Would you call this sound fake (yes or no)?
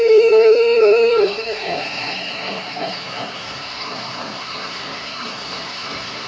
yes